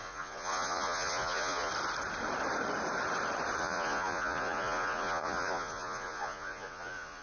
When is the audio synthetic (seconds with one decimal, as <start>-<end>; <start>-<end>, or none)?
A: 0.0-1.7; 3.6-7.2